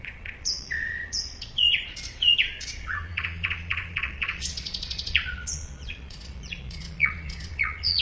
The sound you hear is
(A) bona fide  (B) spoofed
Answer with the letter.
B